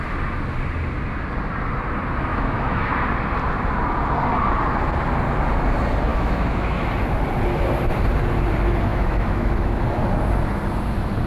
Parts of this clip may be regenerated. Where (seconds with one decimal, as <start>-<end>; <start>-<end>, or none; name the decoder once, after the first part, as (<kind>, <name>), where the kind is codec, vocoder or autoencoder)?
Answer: 2.3-2.9 (autoencoder, DAC-VAE); 6.1-6.9; 8.9-9.8